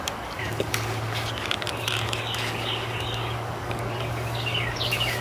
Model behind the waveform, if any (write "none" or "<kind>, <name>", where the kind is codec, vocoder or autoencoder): codec, DAC